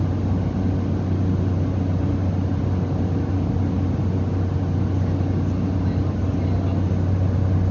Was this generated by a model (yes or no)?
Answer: no